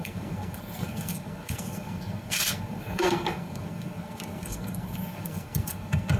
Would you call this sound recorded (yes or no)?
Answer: no